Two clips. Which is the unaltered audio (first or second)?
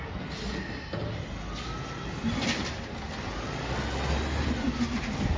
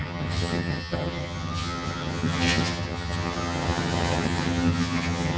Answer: first